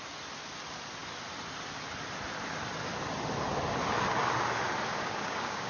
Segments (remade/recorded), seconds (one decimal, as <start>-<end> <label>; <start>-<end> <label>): 0.0-4.9 recorded; 4.9-5.7 remade